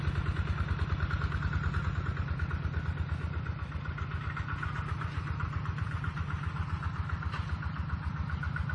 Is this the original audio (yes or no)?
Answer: yes